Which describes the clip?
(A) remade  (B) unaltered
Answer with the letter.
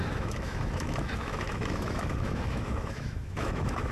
A